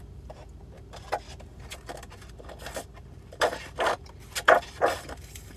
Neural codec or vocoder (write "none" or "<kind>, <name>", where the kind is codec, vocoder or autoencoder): vocoder, BigVGAN v2